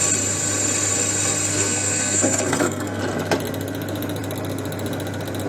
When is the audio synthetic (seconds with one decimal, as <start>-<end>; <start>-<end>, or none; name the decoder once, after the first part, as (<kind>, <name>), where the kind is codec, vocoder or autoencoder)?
1.5-3.0 (codec, SNAC)